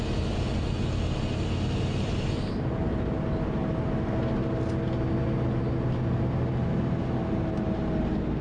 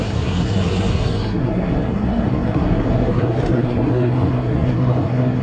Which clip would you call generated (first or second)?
second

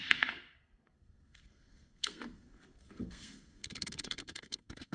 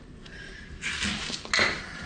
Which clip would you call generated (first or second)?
first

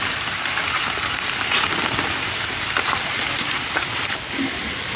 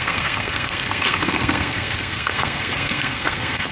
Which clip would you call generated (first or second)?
second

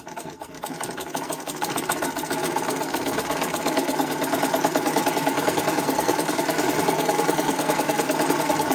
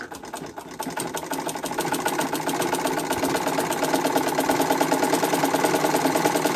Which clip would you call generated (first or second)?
first